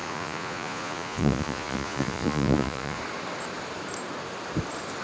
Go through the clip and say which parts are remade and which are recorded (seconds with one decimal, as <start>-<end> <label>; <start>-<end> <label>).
0.0-3.0 remade; 3.0-5.0 recorded